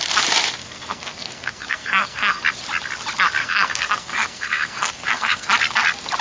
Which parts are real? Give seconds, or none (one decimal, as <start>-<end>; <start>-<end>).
0.0-0.6; 2.4-3.4; 5.5-6.2